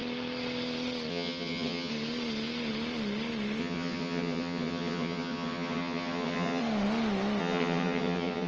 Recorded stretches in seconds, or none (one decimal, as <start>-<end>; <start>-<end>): 0.0-1.1; 1.9-3.6; 6.6-7.4